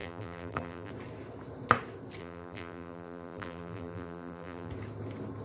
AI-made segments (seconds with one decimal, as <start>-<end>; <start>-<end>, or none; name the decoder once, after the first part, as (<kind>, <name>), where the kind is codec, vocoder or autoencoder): 0.0-0.9 (vocoder, BigVGAN v2); 2.2-4.7